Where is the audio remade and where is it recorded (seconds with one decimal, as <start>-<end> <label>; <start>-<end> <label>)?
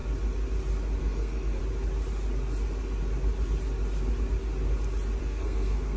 0.0-1.0 recorded; 1.0-1.6 remade; 1.6-5.2 recorded; 5.2-6.0 remade